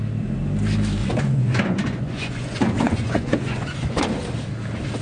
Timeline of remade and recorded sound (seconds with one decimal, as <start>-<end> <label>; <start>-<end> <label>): 0.0-1.0 recorded; 1.0-4.0 remade; 4.0-5.0 recorded